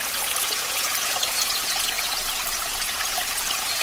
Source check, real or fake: fake